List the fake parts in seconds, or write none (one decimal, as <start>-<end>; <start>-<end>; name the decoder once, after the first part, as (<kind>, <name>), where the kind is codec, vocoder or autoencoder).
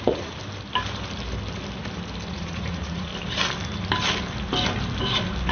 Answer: 0.0-0.4 (vocoder, Vocos); 2.3-3.1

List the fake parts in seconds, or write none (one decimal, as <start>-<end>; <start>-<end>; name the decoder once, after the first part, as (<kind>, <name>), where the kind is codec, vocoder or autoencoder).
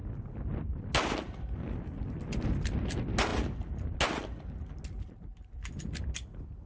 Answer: none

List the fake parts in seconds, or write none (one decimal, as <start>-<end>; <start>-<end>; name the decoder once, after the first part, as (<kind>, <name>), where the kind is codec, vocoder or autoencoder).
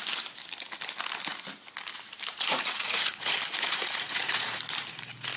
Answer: 2.3-4.6 (vocoder, Vocos)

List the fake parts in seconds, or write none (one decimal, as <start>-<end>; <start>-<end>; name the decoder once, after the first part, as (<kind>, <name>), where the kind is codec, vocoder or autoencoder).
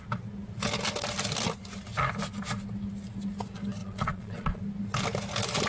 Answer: 3.8-4.6 (vocoder, Vocos)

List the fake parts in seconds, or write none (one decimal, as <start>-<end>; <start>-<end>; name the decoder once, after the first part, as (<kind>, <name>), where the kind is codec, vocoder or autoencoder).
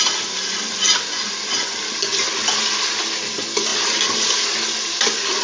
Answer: none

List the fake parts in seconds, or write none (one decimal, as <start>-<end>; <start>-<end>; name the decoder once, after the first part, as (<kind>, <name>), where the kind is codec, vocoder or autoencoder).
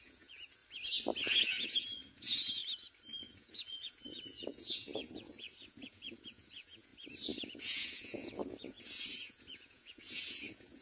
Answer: 0.0-0.6 (vocoder, Vocos); 1.4-2.6; 3.2-6.9; 7.4-10.8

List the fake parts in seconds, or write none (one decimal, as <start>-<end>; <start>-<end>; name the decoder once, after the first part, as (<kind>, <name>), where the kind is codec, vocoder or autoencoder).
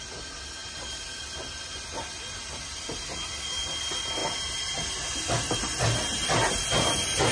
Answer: none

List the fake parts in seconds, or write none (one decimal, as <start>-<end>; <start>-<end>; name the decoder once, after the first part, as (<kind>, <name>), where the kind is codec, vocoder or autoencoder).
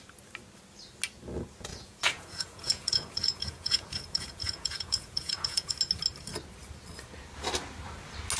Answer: 1.7-5.7 (vocoder, Vocos)